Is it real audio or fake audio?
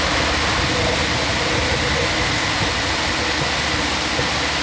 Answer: real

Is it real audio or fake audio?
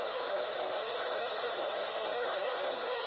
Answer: fake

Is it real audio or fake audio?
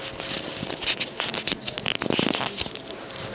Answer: real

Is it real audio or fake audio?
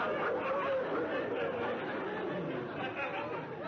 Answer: real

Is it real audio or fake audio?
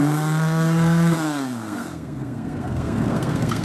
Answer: fake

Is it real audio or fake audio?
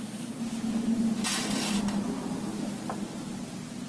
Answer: real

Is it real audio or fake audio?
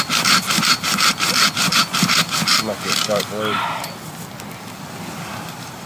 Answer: real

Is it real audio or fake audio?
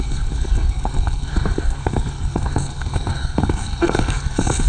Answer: fake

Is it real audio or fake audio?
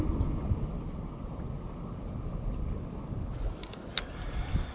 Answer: real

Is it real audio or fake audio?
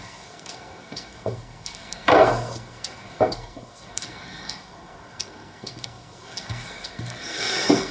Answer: fake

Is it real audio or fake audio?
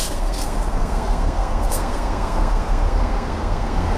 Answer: fake